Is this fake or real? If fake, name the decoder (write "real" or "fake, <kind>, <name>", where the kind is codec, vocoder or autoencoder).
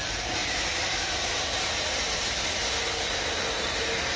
real